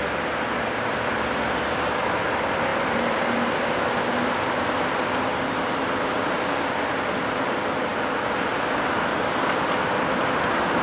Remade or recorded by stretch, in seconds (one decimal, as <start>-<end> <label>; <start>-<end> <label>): 0.0-10.8 recorded